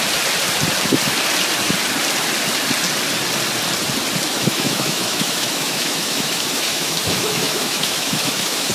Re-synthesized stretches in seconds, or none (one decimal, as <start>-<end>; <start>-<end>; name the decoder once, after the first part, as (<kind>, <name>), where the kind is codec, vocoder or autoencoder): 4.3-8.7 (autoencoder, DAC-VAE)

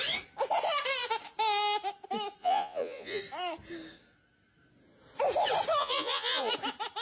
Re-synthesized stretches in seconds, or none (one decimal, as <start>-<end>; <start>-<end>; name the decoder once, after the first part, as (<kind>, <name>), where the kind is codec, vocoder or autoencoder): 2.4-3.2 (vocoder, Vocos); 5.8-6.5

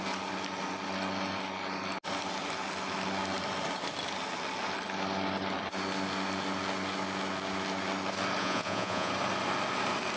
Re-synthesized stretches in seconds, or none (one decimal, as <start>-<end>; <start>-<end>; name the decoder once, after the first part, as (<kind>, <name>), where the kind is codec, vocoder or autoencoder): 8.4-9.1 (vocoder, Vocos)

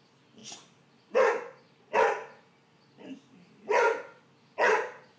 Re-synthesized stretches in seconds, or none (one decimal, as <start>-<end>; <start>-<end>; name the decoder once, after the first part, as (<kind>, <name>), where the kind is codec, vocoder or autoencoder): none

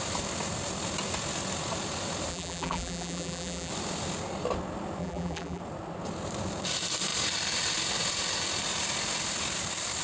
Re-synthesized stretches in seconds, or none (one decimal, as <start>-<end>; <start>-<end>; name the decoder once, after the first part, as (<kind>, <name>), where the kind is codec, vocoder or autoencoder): 2.3-3.7 (vocoder, BigVGAN v2); 5.0-5.6

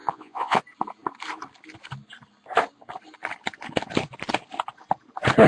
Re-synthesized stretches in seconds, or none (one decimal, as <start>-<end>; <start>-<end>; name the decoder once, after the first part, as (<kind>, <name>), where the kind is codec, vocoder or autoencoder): 0.0-0.6 (vocoder, Vocos)

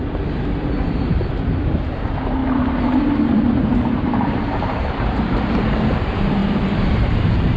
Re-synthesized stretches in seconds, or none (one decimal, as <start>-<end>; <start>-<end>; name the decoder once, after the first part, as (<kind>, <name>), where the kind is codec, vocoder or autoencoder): 0.0-6.4 (vocoder, BigVGAN v2); 7.0-7.6

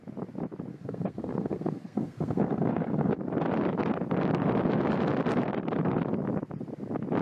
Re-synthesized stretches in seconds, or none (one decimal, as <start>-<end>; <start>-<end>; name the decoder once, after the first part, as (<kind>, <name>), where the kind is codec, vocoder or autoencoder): 0.7-3.2 (codec, SNAC)